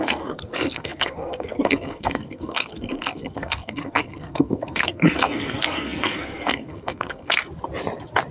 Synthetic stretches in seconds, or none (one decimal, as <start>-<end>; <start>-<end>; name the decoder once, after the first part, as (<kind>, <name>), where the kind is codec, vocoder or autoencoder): 0.0-7.4 (codec, SNAC)